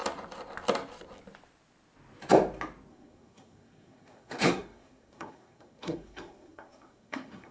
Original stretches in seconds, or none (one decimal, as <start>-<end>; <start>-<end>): 0.0-2.9